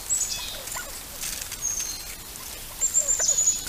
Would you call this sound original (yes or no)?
yes